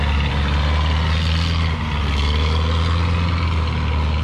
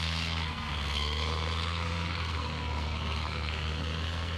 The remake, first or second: second